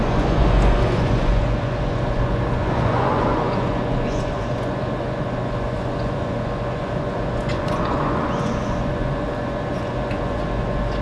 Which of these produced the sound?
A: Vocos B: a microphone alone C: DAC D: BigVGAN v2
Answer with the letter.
A